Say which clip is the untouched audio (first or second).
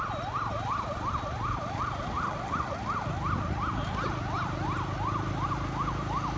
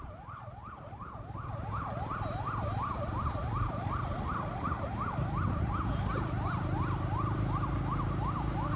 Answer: first